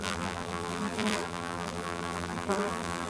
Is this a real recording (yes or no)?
no